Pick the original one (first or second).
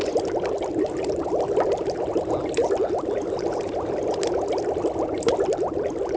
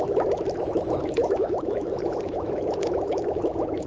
first